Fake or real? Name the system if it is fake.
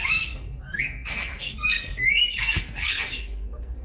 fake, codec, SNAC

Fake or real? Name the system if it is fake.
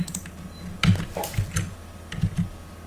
real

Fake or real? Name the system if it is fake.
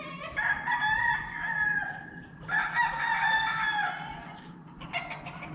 real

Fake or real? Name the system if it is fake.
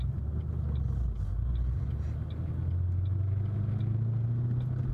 real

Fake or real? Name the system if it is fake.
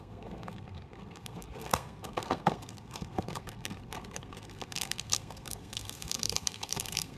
fake, codec, SNAC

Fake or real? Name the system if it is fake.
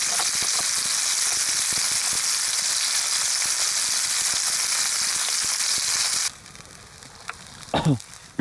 real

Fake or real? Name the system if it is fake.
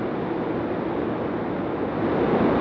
real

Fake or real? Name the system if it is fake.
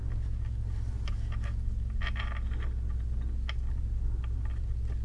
real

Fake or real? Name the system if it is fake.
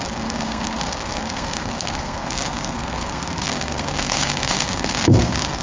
fake, codec, SNAC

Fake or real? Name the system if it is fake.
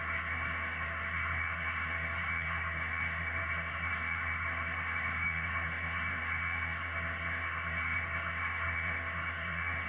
fake, codec, SNAC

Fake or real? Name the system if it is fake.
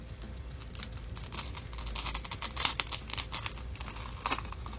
real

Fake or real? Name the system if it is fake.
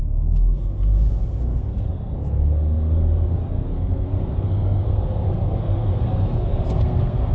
fake, codec, SNAC